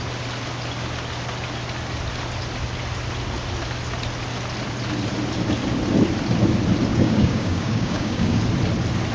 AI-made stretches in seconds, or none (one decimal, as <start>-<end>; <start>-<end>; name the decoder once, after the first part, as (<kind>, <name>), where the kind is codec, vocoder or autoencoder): 6.9-8.4 (codec, DAC)